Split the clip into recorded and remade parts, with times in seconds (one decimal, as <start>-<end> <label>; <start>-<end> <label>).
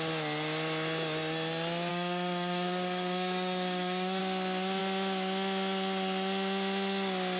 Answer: 0.0-1.9 recorded; 1.9-4.2 remade; 4.2-7.4 recorded